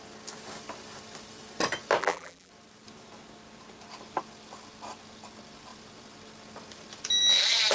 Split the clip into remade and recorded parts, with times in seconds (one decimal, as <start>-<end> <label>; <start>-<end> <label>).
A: 0.0-2.0 recorded; 2.0-2.5 remade; 2.5-7.7 recorded

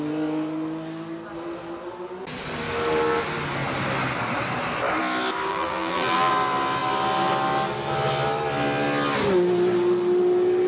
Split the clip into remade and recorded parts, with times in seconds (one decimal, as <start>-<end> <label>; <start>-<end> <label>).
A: 0.0-5.5 recorded; 5.5-6.3 remade; 6.3-10.7 recorded

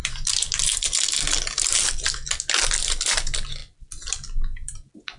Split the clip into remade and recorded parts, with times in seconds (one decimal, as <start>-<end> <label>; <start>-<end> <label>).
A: 0.0-5.2 recorded

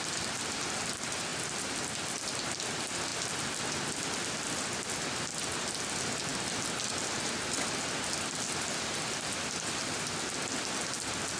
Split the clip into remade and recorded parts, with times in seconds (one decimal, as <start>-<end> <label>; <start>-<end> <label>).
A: 0.0-11.4 recorded

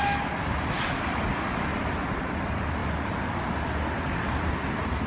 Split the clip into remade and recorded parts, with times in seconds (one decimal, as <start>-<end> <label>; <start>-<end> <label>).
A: 0.0-0.8 recorded; 0.8-1.7 remade; 1.7-2.3 recorded; 2.3-2.8 remade; 2.8-3.6 recorded; 3.6-5.1 remade

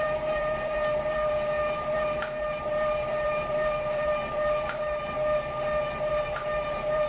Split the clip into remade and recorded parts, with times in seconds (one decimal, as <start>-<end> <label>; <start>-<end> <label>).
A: 0.0-5.2 remade; 5.2-6.1 recorded; 6.1-7.1 remade

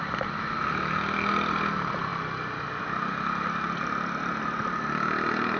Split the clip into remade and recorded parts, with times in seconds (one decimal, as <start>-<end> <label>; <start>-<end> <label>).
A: 0.0-2.1 remade; 2.1-5.6 recorded